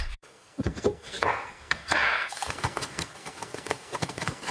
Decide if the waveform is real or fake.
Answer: fake